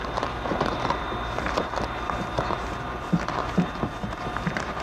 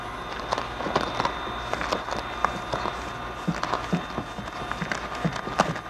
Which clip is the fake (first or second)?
first